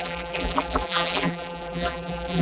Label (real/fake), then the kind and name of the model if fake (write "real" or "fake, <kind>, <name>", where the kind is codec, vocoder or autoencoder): fake, vocoder, BigVGAN v2